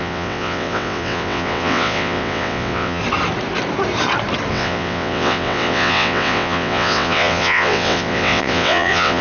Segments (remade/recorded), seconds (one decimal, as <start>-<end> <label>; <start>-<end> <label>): 0.0-3.0 remade; 3.0-4.5 recorded; 4.5-9.2 remade